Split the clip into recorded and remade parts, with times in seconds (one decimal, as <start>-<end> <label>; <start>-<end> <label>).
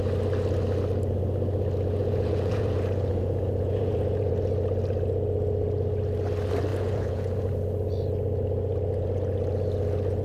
0.0-2.0 recorded; 2.0-4.3 remade; 4.3-6.7 recorded; 6.7-7.5 remade; 7.5-10.2 recorded